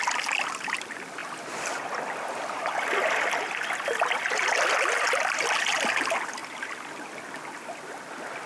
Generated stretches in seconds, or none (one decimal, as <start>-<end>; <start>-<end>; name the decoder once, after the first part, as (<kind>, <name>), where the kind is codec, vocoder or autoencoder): none